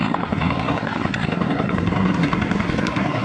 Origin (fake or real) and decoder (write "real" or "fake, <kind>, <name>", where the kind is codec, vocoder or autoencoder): fake, codec, SNAC